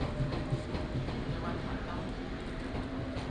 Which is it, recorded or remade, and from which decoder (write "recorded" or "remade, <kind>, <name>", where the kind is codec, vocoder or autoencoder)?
recorded